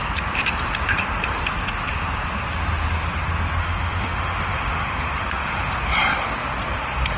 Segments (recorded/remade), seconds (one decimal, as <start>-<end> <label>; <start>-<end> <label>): 0.0-3.6 recorded; 3.6-5.7 remade; 5.7-7.2 recorded